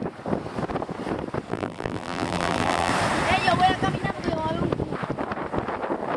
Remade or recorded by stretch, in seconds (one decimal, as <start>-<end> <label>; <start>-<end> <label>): 0.0-1.5 recorded; 1.5-2.9 remade; 2.9-6.2 recorded